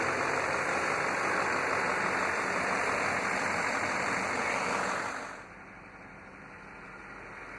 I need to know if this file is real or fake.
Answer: real